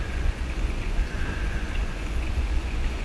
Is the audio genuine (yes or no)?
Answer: no